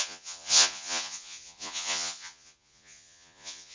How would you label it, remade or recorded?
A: remade